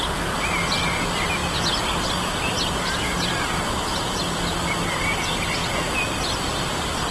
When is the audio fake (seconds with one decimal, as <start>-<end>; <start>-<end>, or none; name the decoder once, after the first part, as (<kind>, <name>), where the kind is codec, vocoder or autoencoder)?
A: none